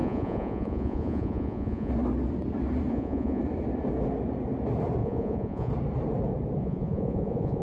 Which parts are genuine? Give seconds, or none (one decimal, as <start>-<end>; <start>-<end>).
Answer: 1.9-2.9; 3.4-5.0; 5.7-6.6